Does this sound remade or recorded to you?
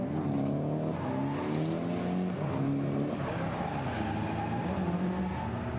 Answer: recorded